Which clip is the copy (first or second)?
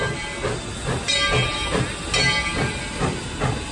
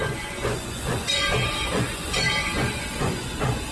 second